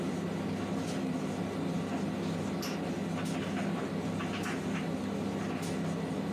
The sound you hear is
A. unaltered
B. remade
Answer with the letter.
A